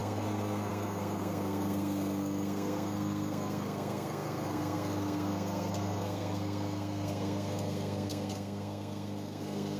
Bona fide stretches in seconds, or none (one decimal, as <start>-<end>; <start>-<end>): none